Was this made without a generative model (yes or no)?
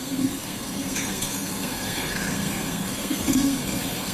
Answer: no